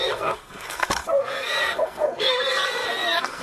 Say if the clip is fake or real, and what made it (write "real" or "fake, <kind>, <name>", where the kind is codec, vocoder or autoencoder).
fake, codec, SNAC